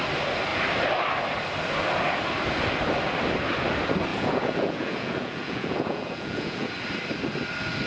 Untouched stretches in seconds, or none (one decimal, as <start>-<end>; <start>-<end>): 0.0-4.1; 6.7-7.9